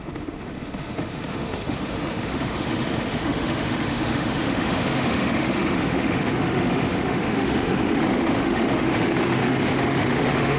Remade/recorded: remade